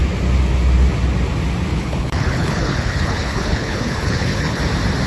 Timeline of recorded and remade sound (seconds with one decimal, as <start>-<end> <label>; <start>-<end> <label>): 0.0-1.7 recorded; 1.7-4.6 remade; 4.6-5.1 recorded